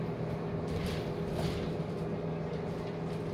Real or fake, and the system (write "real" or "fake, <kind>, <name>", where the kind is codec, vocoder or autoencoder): real